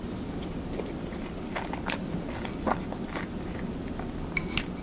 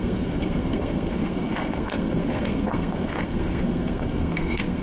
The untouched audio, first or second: first